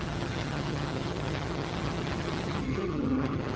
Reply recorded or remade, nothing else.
remade